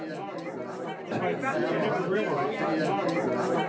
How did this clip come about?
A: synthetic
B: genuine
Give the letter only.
B